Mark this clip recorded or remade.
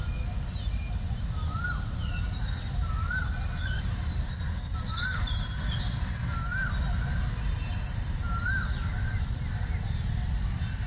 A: recorded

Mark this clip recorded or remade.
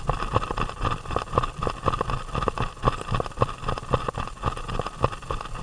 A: recorded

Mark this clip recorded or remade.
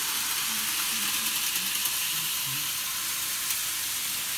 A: recorded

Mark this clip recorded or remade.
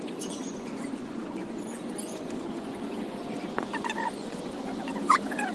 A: remade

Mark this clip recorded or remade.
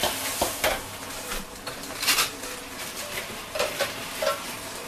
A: remade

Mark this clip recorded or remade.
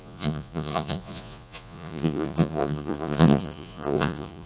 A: remade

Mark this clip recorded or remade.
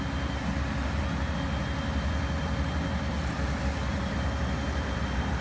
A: recorded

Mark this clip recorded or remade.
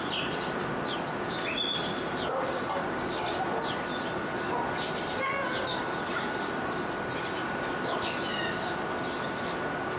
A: recorded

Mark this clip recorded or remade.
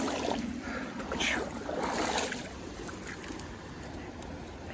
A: recorded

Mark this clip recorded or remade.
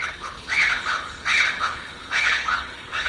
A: remade